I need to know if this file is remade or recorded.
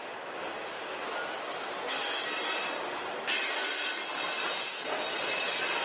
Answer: recorded